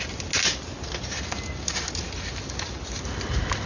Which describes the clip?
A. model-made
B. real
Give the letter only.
B